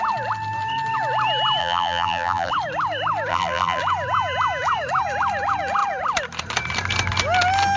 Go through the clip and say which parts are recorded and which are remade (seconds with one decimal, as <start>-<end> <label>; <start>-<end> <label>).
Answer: 0.0-1.6 recorded; 1.6-2.5 remade; 2.5-3.3 recorded; 3.3-3.8 remade; 3.8-7.8 recorded